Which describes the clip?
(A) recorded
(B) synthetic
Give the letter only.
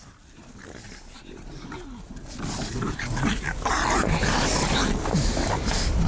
A